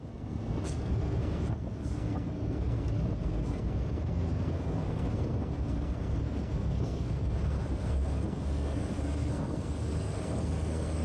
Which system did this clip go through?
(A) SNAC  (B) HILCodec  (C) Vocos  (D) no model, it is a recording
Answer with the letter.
A